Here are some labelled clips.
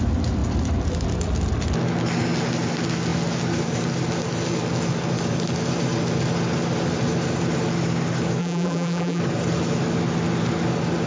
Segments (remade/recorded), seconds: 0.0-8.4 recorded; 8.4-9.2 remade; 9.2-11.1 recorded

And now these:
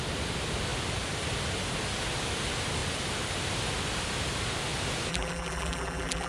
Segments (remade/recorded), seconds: 0.0-5.1 recorded; 5.1-6.3 remade

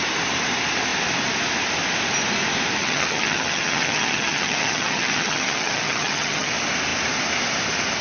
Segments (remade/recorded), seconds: 0.0-2.8 recorded; 2.8-6.5 remade; 6.5-8.0 recorded